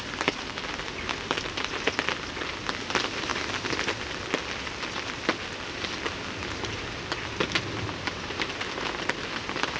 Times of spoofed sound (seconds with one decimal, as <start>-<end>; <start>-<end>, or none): none